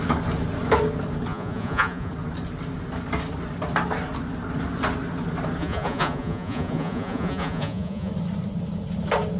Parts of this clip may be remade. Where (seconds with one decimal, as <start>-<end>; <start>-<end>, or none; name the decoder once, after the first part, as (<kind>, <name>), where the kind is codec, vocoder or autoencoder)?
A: 1.3-2.1 (vocoder, Vocos); 5.6-8.1